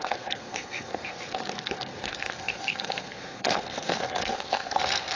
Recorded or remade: remade